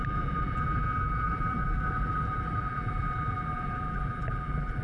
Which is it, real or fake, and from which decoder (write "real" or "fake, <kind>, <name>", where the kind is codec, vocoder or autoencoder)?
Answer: fake, vocoder, BigVGAN v2